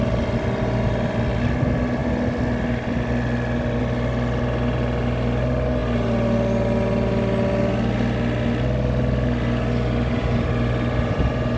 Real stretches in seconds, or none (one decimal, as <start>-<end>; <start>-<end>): 0.0-11.6